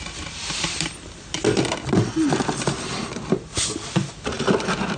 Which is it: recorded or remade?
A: recorded